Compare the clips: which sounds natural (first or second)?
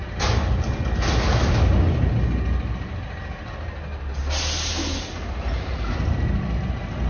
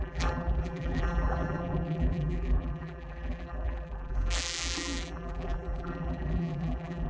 first